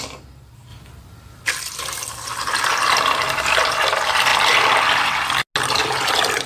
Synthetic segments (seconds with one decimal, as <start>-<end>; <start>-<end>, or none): none